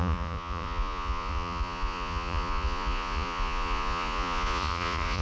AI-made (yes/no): yes